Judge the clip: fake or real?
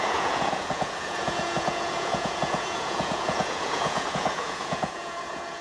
fake